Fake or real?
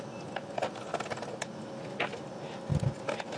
real